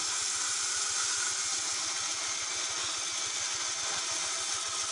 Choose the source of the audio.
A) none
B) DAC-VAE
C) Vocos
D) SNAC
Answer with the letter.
A